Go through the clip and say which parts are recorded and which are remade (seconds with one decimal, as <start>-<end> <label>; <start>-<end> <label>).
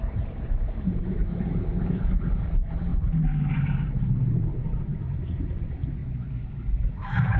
0.0-2.9 remade; 2.9-4.2 recorded; 4.2-6.0 remade; 6.0-6.9 recorded; 6.9-7.4 remade